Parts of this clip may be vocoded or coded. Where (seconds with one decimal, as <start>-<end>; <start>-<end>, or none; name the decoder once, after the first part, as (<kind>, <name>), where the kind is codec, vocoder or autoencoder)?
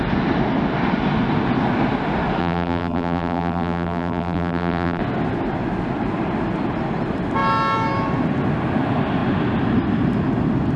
2.4-5.0 (vocoder, BigVGAN v2)